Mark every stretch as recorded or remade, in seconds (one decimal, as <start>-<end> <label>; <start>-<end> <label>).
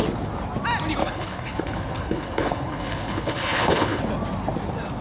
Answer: 0.0-1.0 recorded; 1.0-4.0 remade; 4.0-5.0 recorded